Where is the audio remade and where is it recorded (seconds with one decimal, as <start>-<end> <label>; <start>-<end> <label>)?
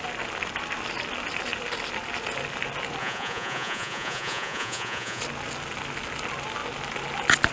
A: 0.0-3.0 recorded; 3.0-5.2 remade; 5.2-7.5 recorded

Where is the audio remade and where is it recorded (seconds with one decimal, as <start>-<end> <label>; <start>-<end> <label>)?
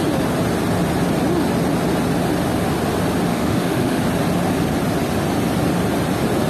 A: 0.0-3.3 recorded; 3.3-4.0 remade; 4.0-6.5 recorded